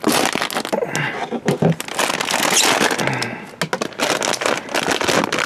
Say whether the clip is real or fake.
real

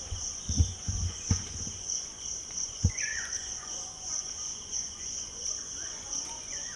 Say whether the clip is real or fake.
fake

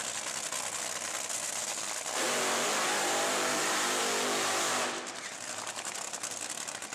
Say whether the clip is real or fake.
real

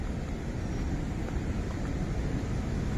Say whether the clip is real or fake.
real